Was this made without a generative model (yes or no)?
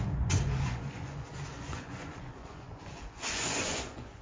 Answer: no